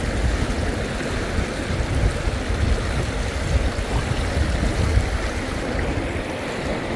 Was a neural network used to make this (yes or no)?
no